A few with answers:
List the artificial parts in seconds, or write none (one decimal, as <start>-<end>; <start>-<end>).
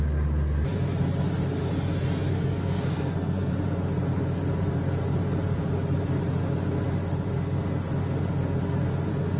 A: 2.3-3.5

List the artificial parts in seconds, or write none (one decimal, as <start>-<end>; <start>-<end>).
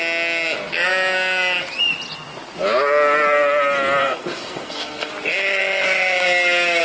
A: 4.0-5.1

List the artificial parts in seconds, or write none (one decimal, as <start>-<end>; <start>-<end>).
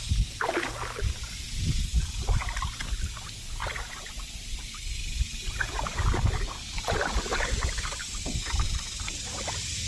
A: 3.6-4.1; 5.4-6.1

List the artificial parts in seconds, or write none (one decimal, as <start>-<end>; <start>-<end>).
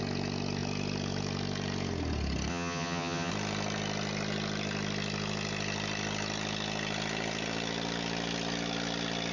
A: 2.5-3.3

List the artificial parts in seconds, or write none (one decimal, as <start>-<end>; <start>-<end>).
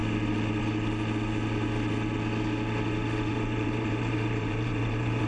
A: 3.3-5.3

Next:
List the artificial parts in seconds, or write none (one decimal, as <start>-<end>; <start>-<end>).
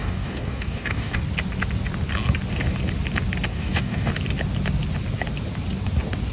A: 0.0-1.2; 3.5-4.1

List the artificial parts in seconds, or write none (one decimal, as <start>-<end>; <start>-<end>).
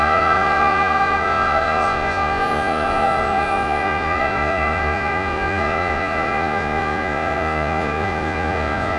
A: 0.0-9.0